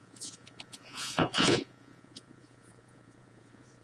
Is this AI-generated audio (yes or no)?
yes